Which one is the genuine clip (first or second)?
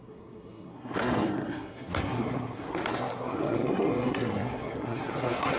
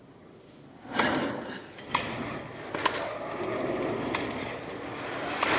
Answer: second